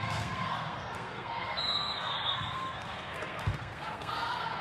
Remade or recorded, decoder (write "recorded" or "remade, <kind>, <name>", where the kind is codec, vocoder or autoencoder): remade, codec, SNAC